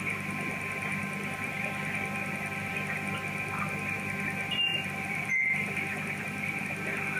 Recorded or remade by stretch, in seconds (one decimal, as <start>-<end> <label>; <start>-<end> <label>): 0.0-1.0 recorded; 1.0-2.3 remade; 2.3-4.7 recorded; 4.7-6.6 remade; 6.6-7.2 recorded